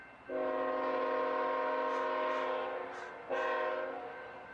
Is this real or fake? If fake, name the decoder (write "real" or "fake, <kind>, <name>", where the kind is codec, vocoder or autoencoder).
real